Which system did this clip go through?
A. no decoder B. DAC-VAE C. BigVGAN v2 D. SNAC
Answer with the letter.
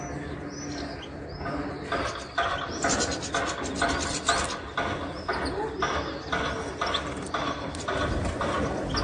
A